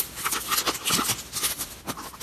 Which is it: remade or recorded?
recorded